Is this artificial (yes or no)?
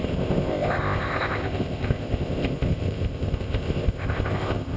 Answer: yes